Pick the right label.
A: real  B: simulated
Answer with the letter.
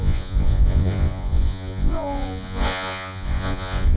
B